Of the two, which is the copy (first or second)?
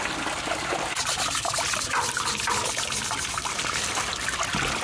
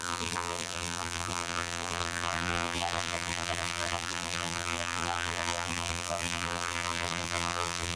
second